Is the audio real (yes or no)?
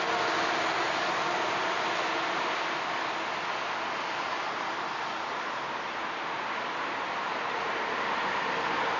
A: yes